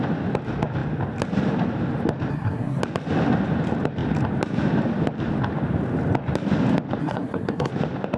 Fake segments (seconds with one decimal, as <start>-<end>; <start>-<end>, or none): 2.3-2.8; 7.0-7.7